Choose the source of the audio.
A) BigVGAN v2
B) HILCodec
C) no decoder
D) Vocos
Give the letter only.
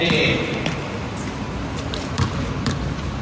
A